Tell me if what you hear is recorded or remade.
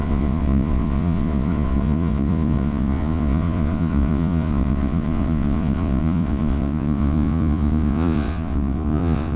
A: remade